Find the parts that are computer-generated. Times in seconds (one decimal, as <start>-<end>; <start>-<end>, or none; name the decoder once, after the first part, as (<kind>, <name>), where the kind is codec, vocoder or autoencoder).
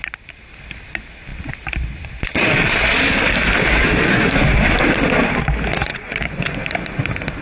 5.9-6.6 (vocoder, Vocos)